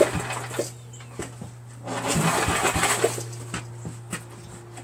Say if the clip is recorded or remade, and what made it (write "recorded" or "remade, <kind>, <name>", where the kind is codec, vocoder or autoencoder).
recorded